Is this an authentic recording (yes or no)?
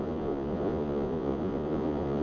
no